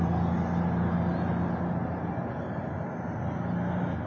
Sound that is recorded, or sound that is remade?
recorded